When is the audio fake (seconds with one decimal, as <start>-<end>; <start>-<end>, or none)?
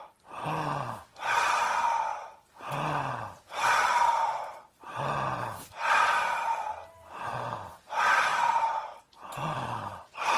none